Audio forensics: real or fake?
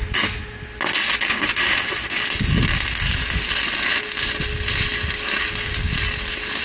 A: real